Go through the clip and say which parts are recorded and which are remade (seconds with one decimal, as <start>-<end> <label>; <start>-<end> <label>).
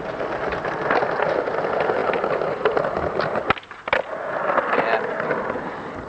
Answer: 0.0-6.1 recorded